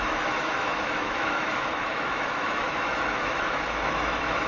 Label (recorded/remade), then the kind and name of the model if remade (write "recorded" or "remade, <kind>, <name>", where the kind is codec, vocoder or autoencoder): remade, autoencoder, DAC-VAE